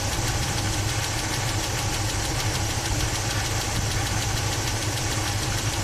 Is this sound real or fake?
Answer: real